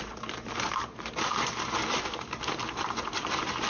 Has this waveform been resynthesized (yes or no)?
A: yes